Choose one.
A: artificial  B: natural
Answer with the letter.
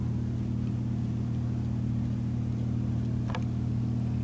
B